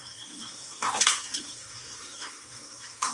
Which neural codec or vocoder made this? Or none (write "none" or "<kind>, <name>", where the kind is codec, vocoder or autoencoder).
codec, SNAC